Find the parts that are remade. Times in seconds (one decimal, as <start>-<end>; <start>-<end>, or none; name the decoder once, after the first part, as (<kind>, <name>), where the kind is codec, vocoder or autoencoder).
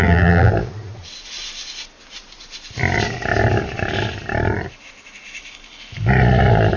0.0-0.5 (vocoder, BigVGAN v2)